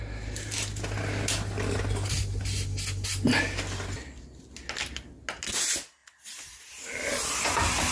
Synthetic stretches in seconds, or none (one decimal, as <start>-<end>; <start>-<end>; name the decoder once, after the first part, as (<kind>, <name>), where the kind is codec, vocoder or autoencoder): none